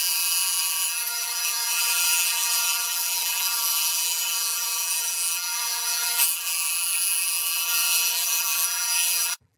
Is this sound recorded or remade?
remade